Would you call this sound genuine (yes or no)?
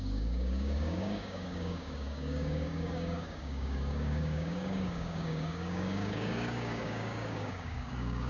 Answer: no